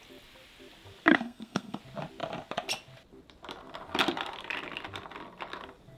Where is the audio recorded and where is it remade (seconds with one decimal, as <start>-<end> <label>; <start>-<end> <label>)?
0.0-1.1 recorded; 1.1-1.8 remade; 1.8-6.0 recorded